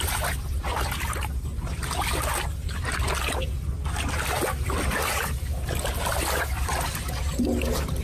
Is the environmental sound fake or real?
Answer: real